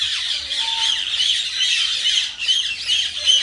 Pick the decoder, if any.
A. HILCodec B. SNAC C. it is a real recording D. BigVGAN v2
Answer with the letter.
C